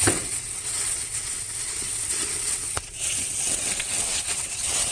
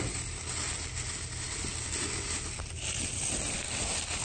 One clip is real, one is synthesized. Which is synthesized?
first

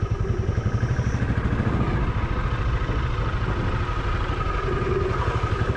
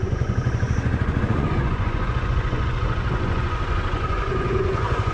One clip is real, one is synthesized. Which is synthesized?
second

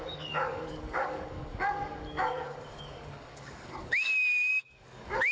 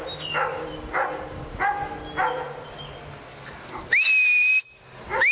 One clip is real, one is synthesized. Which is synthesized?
first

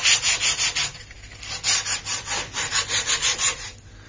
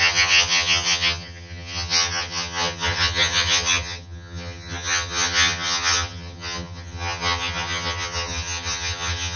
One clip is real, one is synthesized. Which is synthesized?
second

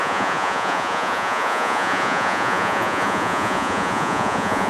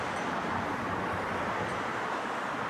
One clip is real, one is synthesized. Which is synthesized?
first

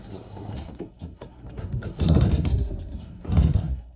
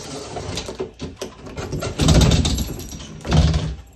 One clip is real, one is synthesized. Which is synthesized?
first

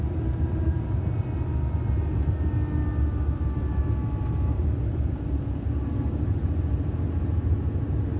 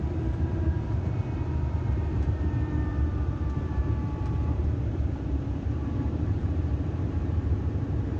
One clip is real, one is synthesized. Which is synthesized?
second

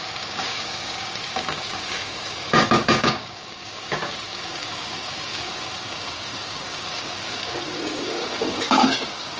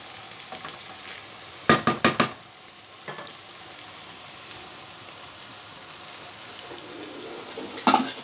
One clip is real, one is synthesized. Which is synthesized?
first